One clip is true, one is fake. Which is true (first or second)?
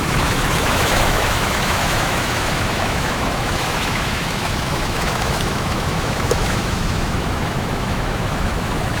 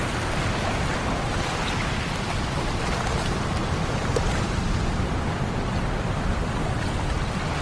second